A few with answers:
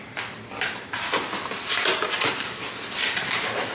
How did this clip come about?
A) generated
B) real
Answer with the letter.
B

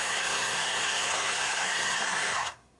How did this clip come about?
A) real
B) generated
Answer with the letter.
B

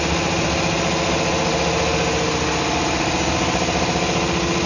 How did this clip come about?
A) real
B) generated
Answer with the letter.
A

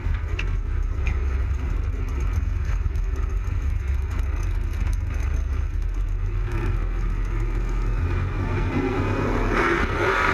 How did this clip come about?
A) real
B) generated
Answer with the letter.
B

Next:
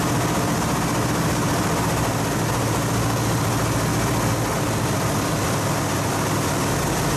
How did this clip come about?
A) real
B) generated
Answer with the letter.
A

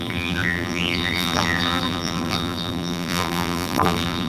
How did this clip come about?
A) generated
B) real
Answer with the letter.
A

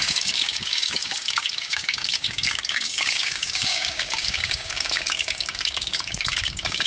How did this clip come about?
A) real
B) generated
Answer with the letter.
B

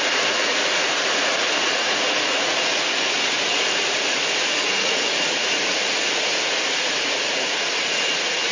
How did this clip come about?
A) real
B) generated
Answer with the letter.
B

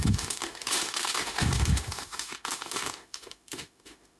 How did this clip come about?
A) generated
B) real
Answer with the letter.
A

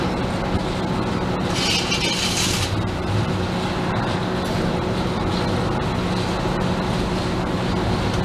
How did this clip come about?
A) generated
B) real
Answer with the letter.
B